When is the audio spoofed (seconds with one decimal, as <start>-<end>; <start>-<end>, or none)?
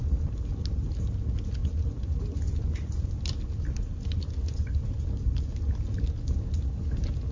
none